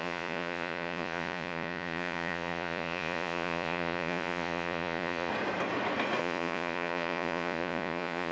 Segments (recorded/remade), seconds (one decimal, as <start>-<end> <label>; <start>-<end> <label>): 0.0-5.3 remade; 5.3-6.2 recorded; 6.2-8.3 remade